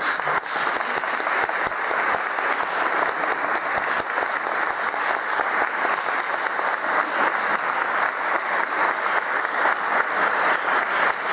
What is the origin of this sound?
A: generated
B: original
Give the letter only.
B